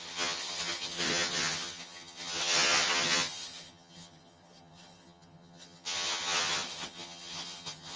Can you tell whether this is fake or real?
fake